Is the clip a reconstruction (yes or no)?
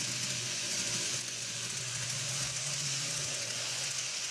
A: yes